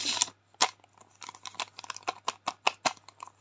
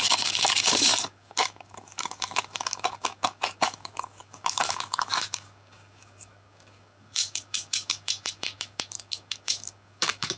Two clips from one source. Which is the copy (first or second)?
second